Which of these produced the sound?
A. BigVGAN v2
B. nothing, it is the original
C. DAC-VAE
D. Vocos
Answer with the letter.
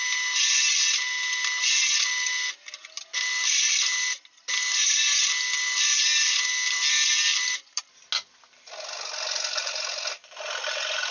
B